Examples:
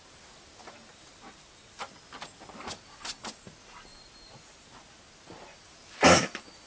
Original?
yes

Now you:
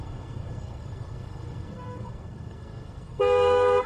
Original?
no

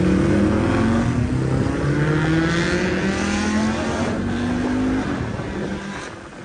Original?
yes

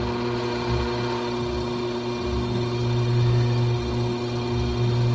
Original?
yes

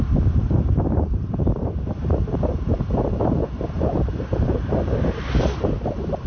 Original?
no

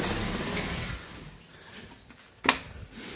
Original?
yes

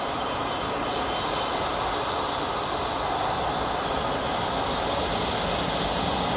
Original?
yes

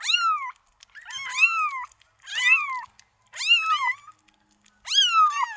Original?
yes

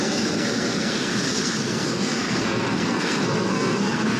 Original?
no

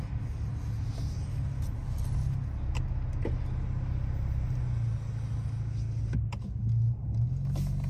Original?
yes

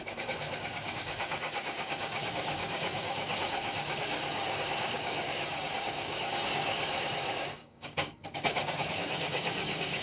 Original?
no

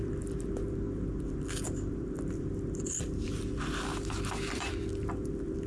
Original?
no